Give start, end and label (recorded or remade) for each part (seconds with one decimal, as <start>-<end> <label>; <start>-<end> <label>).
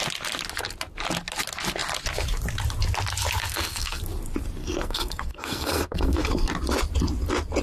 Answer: 0.0-3.4 recorded; 3.4-4.0 remade; 4.0-4.6 recorded; 4.6-6.5 remade; 6.5-7.6 recorded